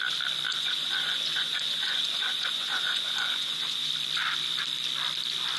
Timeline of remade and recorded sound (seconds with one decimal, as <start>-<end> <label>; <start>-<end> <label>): 0.0-0.5 recorded; 0.5-3.9 remade; 3.9-5.6 recorded